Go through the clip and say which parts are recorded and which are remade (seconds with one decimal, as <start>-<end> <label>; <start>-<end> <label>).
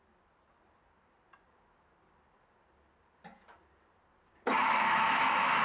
0.0-4.6 recorded; 4.6-5.6 remade